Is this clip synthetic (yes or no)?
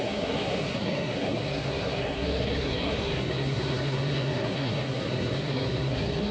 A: yes